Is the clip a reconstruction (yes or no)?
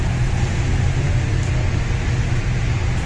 no